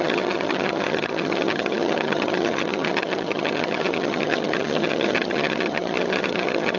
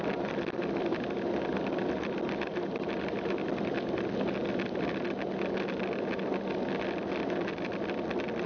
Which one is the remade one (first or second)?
first